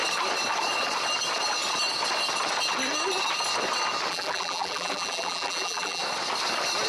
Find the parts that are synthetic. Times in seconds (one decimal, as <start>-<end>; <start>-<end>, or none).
4.1-6.0